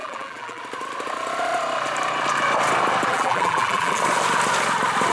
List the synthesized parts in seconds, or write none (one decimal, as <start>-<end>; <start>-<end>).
0.0-0.6; 3.1-4.0